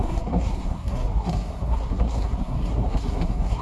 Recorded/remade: remade